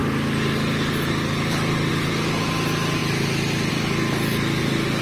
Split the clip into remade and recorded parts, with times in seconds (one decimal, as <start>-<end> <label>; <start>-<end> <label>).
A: 0.0-5.0 recorded